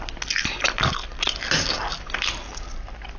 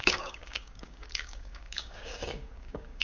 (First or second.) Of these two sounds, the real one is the first